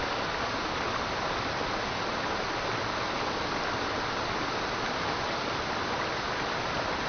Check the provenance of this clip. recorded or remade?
recorded